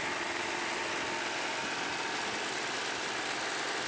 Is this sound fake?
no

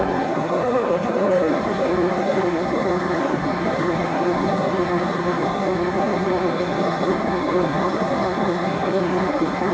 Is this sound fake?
yes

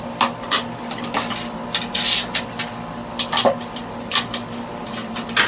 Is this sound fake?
no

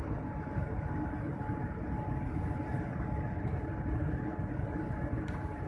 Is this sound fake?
no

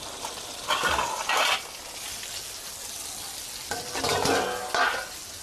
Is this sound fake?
no